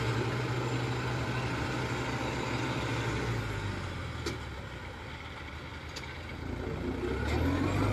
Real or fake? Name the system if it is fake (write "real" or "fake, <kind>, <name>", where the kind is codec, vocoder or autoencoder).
real